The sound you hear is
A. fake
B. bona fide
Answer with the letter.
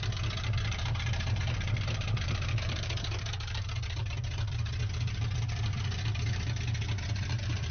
A